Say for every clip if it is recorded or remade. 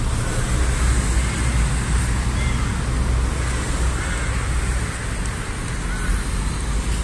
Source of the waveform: recorded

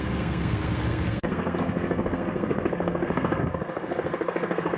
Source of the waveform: remade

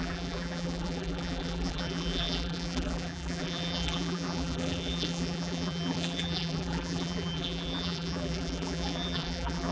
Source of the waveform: remade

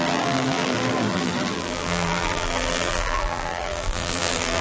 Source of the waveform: remade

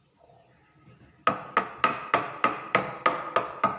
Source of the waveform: recorded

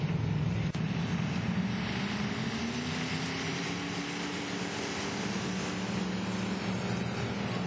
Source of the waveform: recorded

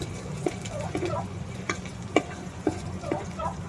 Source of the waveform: remade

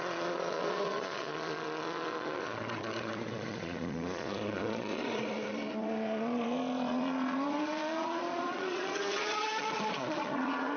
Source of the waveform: remade